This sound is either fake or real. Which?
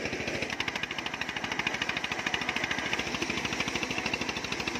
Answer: real